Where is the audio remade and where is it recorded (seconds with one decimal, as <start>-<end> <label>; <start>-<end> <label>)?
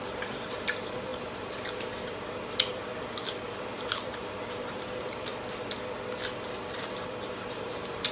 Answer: 0.0-2.8 remade; 2.8-3.6 recorded; 3.6-5.3 remade; 5.3-6.7 recorded; 6.7-8.1 remade